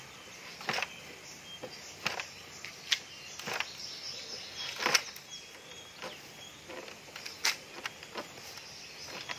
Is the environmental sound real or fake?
real